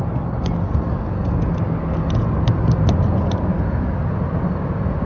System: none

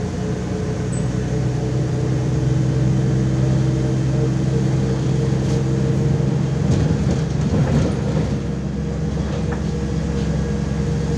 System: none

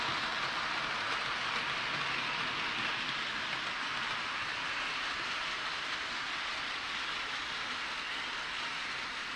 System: none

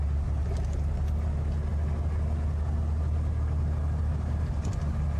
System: none